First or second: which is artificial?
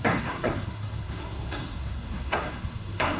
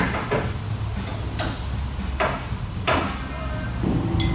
first